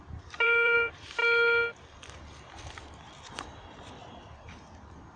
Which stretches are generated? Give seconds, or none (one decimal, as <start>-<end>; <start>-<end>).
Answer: 0.0-1.2; 1.8-5.2